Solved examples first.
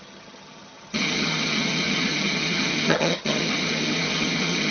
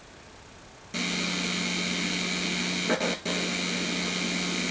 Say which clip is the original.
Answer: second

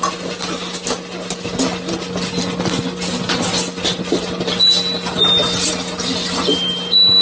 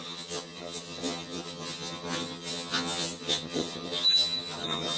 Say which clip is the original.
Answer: first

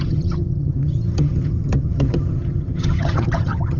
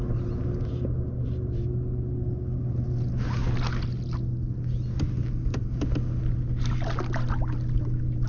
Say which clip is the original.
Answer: second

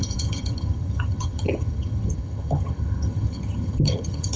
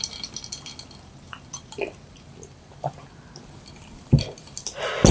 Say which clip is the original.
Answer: second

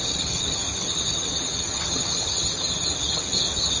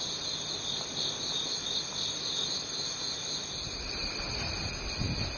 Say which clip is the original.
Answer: second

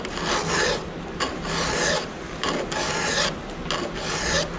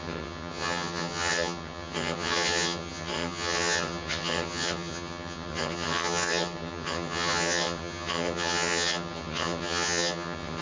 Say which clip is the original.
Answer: first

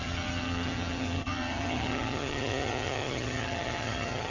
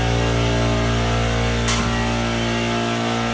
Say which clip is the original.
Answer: second